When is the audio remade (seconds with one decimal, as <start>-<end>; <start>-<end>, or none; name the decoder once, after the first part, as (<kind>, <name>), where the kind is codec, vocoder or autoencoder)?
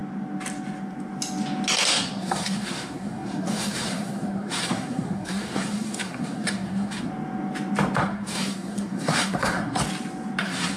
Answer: 1.9-7.1 (codec, SNAC); 8.0-9.8; 10.4-10.8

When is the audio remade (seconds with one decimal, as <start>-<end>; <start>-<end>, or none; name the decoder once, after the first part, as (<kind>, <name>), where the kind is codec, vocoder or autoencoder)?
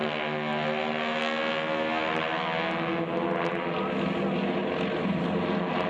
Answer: none